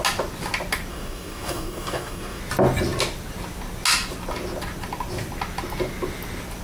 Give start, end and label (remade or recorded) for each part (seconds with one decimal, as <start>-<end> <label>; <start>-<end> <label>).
0.0-0.9 recorded; 0.9-2.4 remade; 2.4-6.6 recorded